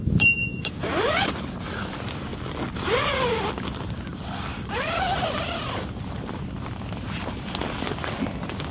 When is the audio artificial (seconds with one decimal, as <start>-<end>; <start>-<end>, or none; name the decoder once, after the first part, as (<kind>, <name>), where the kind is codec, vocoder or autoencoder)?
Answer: 0.4-1.9 (vocoder, BigVGAN v2); 2.3-3.6; 4.1-4.7